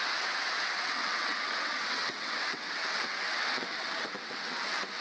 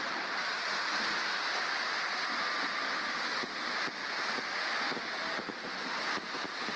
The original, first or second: second